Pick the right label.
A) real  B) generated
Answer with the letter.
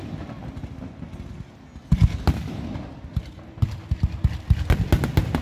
A